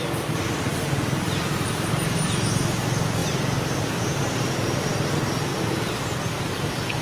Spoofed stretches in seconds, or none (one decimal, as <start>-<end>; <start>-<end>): 0.0-5.5; 6.0-7.0